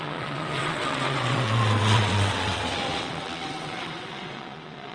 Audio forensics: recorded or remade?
remade